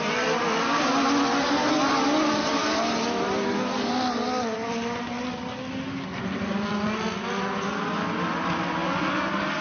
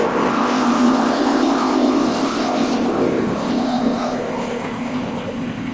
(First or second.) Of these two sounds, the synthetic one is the second